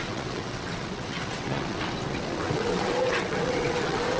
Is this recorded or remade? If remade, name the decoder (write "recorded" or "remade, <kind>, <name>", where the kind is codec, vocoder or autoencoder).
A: remade, vocoder, WaveNeXt